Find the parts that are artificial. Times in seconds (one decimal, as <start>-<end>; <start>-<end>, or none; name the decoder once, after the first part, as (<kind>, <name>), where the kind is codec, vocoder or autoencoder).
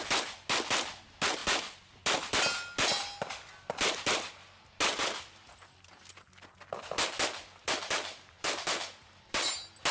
4.9-5.5 (vocoder, BigVGAN v2); 7.6-9.5